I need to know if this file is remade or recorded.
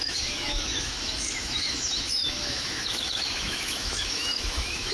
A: remade